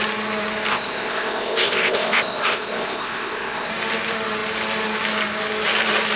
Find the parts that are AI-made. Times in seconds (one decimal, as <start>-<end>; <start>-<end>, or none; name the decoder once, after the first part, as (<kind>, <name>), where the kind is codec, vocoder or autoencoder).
0.7-3.7 (codec, ZipCodec)